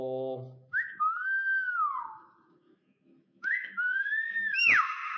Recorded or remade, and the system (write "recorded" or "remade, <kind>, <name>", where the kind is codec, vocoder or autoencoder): remade, autoencoder, DAC-VAE